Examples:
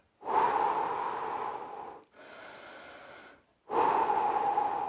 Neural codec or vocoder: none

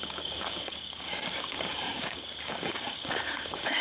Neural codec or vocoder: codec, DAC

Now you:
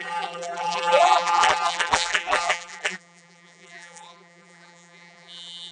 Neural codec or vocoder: vocoder, BigVGAN v2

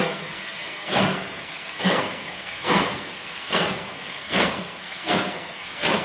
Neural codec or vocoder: codec, SNAC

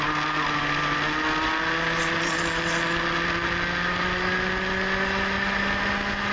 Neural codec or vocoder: none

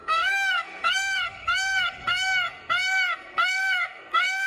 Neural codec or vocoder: codec, SNAC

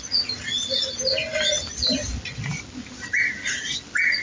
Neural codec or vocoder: none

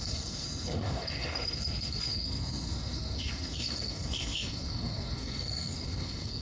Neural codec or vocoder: codec, SNAC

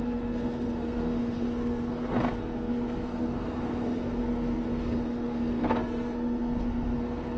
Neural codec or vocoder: codec, SNAC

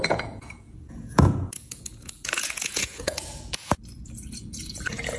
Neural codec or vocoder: vocoder, Vocos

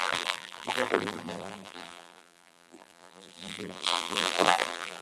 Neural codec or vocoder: vocoder, BigVGAN v2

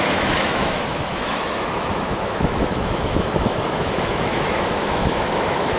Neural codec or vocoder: autoencoder, DAC-VAE